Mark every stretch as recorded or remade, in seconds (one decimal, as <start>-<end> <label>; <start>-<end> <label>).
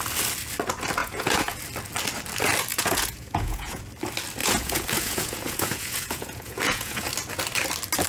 0.0-1.0 recorded; 1.0-1.6 remade; 1.6-2.7 recorded; 2.7-3.8 remade; 3.8-4.4 recorded; 4.4-7.1 remade; 7.1-8.1 recorded